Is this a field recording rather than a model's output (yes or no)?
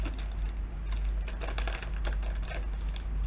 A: yes